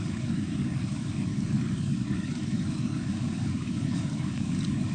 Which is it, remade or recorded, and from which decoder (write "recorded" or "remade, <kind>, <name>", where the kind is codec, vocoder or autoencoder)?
remade, codec, DAC